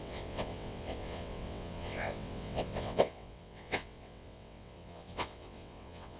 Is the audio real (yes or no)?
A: no